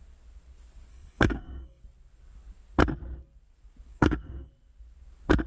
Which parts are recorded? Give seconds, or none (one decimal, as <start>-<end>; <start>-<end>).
0.0-0.9; 1.8-3.9; 4.5-5.5